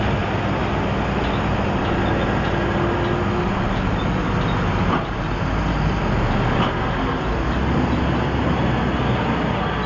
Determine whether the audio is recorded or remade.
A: recorded